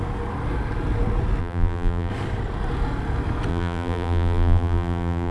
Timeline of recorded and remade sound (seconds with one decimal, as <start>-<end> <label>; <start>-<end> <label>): 0.0-1.4 recorded; 1.4-2.1 remade; 2.1-3.5 recorded; 3.5-5.3 remade